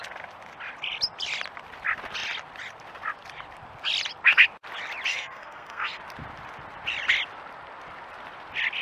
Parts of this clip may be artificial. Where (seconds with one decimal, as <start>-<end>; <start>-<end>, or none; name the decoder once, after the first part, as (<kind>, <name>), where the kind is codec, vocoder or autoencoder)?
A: 5.1-6.0 (codec, SNAC)